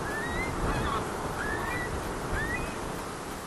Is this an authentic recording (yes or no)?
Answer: yes